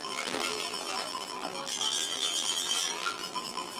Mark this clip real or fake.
fake